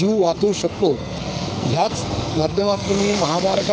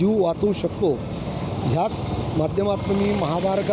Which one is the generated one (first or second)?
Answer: first